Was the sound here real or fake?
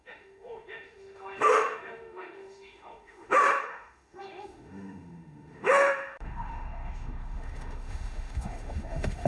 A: fake